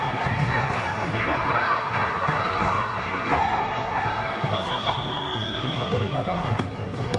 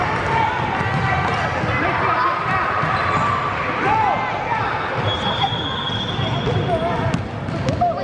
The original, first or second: second